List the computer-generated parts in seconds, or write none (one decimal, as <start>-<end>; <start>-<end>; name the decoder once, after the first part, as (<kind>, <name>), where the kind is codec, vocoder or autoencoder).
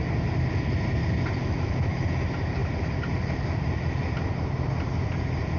1.4-2.0 (autoencoder, DAC-VAE)